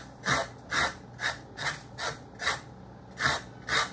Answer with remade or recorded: recorded